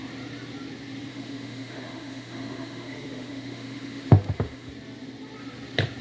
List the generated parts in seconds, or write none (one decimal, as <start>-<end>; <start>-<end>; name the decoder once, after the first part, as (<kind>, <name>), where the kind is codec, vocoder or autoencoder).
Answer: 1.1-4.7 (autoencoder, DAC-VAE)